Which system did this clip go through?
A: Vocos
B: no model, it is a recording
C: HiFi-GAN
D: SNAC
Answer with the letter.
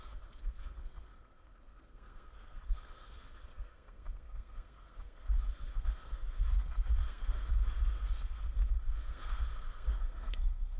D